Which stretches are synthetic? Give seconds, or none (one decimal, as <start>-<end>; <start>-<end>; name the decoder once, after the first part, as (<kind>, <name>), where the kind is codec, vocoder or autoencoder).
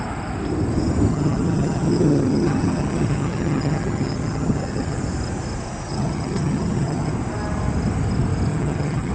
1.1-5.0 (vocoder, HiFi-GAN); 5.9-7.1; 8.5-9.1